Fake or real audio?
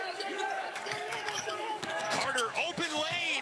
fake